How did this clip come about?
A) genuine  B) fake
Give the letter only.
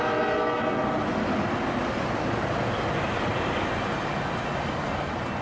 A